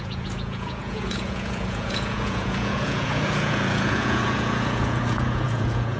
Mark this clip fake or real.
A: fake